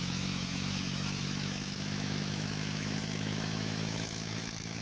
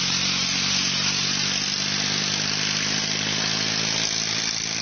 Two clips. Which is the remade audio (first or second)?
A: first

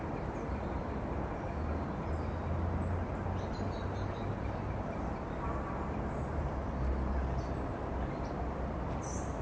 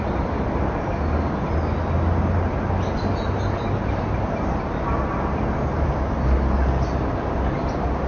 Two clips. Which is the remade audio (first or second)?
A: first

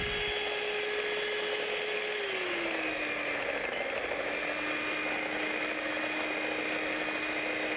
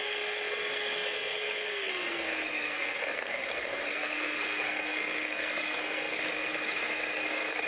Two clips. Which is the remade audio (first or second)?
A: second